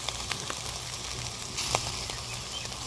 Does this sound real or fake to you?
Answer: real